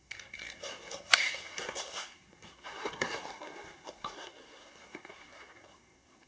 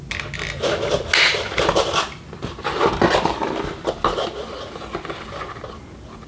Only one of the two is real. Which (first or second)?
second